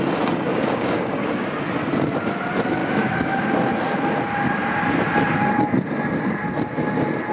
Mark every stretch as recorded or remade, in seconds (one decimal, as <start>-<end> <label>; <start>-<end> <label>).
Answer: 0.0-0.5 recorded; 0.5-1.7 remade; 1.7-2.8 recorded; 2.8-3.4 remade; 3.4-7.3 recorded